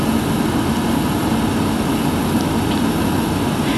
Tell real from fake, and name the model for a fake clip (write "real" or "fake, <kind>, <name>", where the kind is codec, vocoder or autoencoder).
real